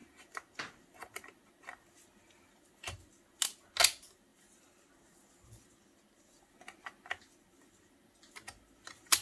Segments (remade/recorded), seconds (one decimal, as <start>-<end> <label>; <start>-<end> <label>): 0.0-9.2 recorded